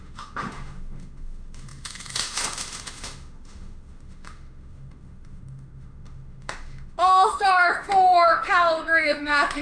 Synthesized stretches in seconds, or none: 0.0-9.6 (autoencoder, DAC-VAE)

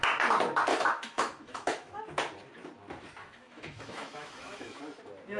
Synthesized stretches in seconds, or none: 0.7-2.0 (autoencoder, DAC-VAE); 3.2-4.8

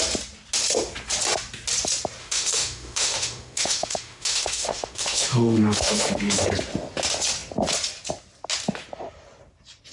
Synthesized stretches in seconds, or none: 2.2-6.5 (autoencoder, DAC-VAE)

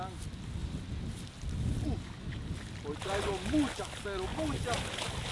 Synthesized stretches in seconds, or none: none

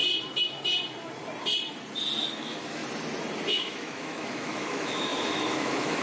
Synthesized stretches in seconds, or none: 2.3-2.8 (autoencoder, DAC-VAE); 3.5-6.0

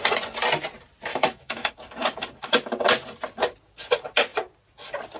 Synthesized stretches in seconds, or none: 1.1-1.7 (autoencoder, DAC-VAE)

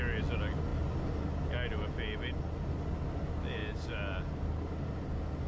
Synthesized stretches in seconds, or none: none

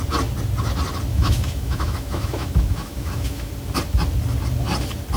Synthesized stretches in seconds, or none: 1.1-3.5 (autoencoder, DAC-VAE)